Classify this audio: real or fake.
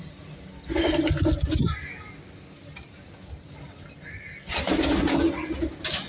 real